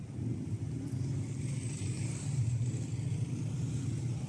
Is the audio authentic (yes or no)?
yes